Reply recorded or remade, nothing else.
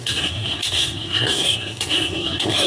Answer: remade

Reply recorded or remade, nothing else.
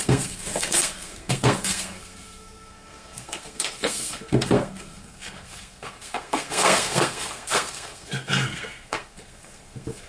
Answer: remade